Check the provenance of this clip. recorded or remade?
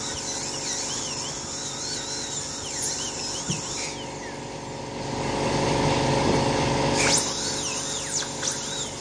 recorded